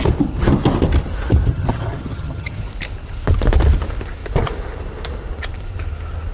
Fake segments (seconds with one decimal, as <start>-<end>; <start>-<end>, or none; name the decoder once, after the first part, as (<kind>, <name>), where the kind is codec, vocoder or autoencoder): 1.5-2.6 (vocoder, HiFi-GAN)